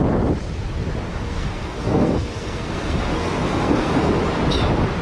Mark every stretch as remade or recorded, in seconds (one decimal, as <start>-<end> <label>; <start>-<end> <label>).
0.0-1.1 recorded; 1.1-4.1 remade; 4.1-5.0 recorded